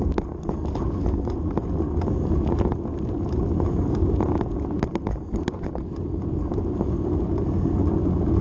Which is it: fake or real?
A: real